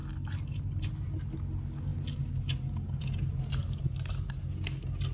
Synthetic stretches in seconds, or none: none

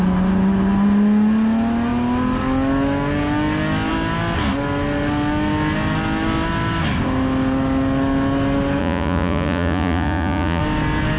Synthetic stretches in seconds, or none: 8.8-10.6 (vocoder, Vocos)

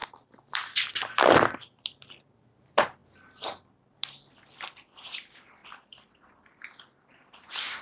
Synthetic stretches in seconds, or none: 0.0-2.1 (vocoder, BigVGAN v2); 3.0-3.8; 5.6-7.8

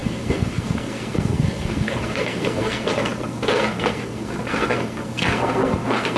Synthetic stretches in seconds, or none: 0.0-6.2 (codec, SNAC)

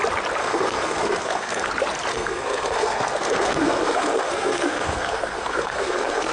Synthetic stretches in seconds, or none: 0.4-1.7 (codec, SNAC); 2.1-6.3

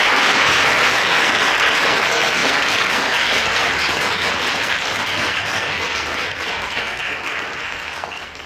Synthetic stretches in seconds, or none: 0.0-8.5 (codec, SNAC)

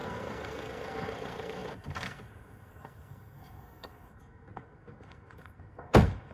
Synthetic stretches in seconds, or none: 0.0-6.3 (codec, SNAC)

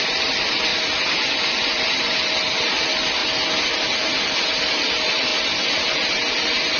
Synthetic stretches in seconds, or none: 0.0-0.7 (vocoder, BigVGAN v2); 1.3-3.2; 4.2-5.3; 6.3-6.8